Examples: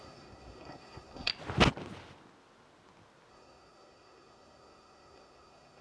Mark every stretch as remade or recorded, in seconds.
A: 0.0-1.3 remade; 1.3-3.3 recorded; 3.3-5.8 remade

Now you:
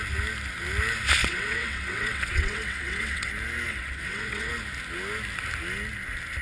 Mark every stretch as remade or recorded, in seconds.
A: 0.0-1.2 recorded; 1.2-3.3 remade; 3.3-3.7 recorded; 3.7-4.5 remade; 4.5-6.4 recorded

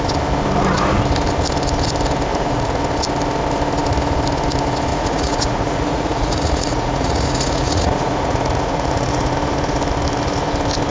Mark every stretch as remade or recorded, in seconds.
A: 0.0-2.3 recorded; 2.3-2.8 remade; 2.8-4.9 recorded; 4.9-9.3 remade; 9.3-10.9 recorded

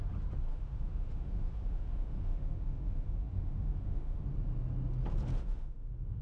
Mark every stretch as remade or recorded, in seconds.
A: 0.0-0.5 recorded; 0.5-4.2 remade; 4.2-5.3 recorded; 5.3-6.2 remade

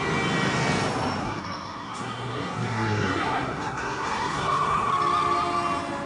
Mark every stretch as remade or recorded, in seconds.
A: 0.0-1.2 recorded; 1.2-4.9 remade; 4.9-6.1 recorded

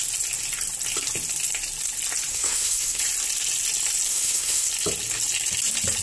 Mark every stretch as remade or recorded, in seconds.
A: 0.0-2.3 recorded; 2.3-3.0 remade; 3.0-4.1 recorded; 4.1-4.7 remade; 4.7-6.0 recorded